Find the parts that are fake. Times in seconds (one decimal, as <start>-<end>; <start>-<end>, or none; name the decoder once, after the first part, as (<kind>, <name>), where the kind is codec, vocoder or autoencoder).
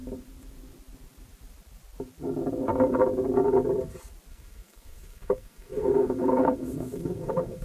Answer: 4.3-7.6 (codec, SNAC)